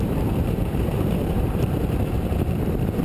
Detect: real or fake fake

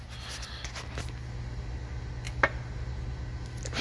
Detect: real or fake real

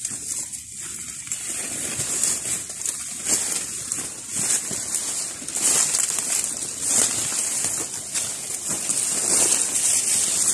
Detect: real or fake real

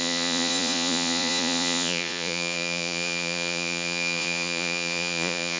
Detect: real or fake fake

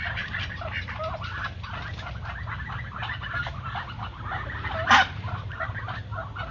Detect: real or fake real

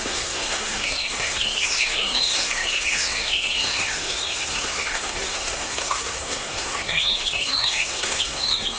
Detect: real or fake fake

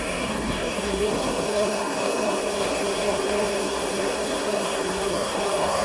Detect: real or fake fake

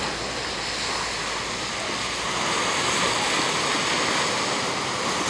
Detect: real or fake real